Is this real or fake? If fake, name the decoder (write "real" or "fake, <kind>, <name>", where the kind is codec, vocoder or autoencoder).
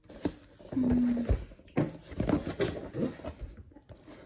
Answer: real